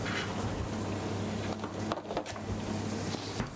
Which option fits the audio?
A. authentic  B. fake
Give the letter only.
A